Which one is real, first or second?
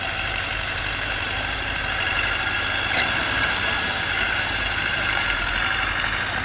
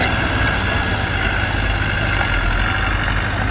second